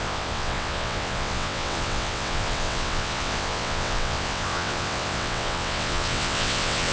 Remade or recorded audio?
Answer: remade